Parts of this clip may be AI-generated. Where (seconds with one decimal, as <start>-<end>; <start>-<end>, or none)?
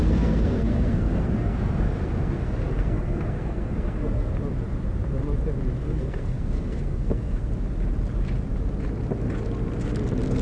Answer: 0.0-4.3; 5.8-7.5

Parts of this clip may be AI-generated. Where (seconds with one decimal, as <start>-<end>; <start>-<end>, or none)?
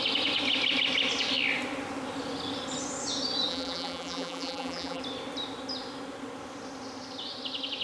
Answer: 3.5-5.0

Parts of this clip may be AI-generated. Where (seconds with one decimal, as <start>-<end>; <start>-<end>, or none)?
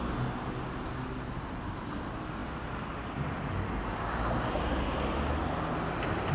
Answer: none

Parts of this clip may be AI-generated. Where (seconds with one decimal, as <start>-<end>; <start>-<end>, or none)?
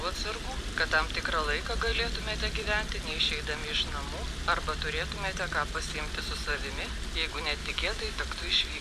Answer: 7.6-8.2